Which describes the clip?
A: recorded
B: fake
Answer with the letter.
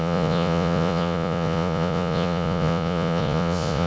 B